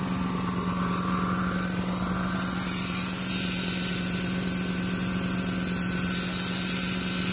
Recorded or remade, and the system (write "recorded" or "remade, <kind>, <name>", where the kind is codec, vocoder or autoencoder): recorded